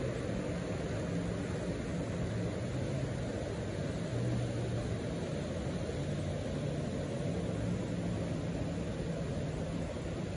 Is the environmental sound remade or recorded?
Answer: recorded